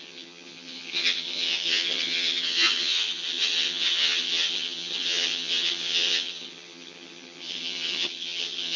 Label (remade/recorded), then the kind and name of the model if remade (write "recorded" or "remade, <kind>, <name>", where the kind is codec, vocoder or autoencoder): remade, vocoder, HiFi-GAN